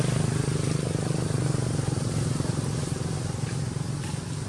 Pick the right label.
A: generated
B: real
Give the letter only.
B